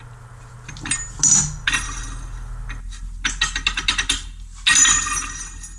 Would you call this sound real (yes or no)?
yes